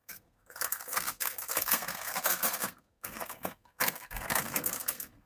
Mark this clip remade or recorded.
remade